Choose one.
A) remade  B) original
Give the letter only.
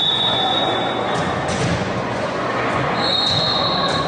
A